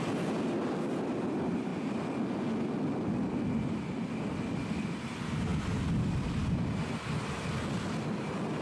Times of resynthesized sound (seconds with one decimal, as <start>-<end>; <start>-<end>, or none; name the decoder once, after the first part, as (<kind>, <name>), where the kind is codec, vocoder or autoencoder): none